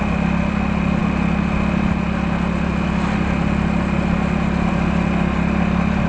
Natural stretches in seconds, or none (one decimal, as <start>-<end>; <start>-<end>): 0.0-6.1